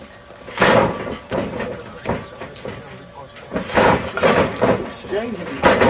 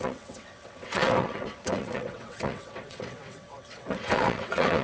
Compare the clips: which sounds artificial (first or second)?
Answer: second